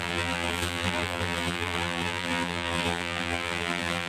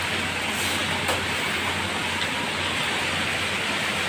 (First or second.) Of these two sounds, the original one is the second